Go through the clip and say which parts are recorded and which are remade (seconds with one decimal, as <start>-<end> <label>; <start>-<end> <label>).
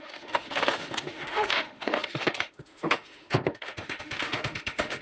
0.0-5.0 remade